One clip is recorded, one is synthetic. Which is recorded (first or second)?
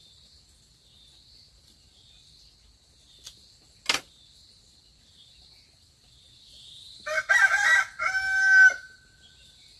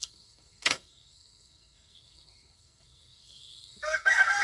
first